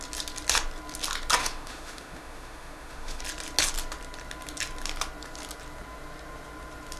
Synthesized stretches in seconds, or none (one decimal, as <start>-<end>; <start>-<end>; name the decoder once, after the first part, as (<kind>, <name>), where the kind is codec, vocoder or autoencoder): 1.4-3.2 (autoencoder, DAC-VAE)